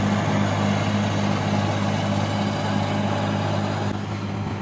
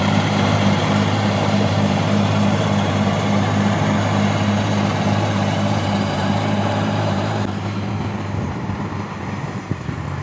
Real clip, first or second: first